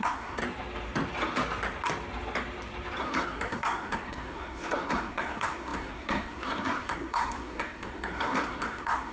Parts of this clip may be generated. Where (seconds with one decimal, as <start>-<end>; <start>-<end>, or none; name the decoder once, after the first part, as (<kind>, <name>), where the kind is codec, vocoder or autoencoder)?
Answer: 0.0-0.4 (codec, SNAC); 3.0-9.1